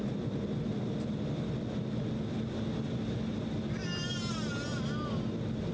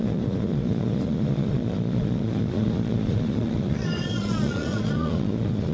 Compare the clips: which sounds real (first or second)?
first